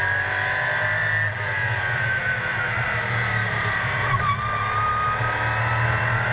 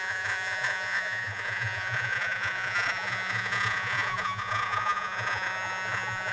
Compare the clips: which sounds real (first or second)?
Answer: first